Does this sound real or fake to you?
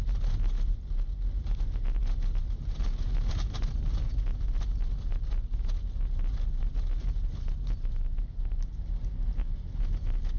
real